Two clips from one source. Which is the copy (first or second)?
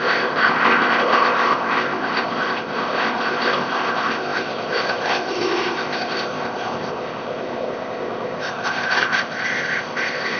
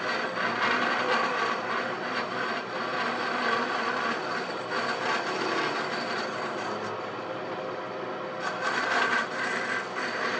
first